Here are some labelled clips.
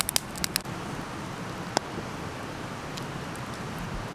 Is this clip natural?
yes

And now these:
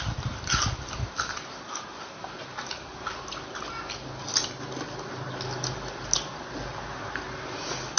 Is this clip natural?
yes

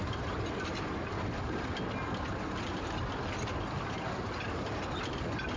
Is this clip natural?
yes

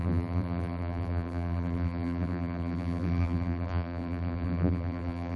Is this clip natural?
no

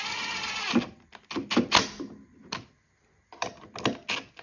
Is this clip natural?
yes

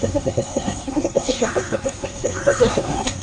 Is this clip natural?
no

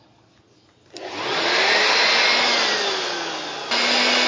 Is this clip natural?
yes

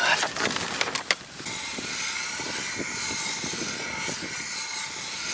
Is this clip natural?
yes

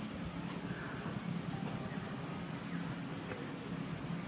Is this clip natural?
yes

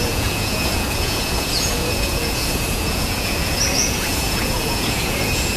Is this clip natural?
no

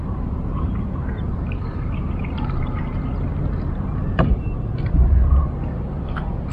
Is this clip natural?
no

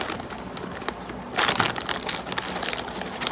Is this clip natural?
yes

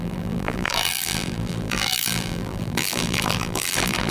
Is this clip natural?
no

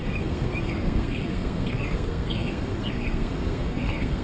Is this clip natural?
no